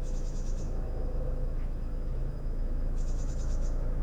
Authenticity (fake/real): fake